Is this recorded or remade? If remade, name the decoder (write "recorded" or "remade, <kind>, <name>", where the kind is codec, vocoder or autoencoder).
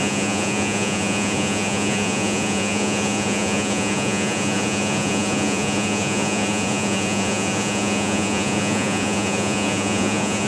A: remade, vocoder, Vocos